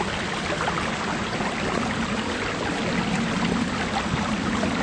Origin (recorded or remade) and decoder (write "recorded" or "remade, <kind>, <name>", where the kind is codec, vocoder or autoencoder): recorded